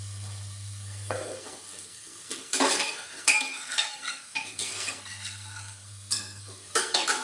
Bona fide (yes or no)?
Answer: no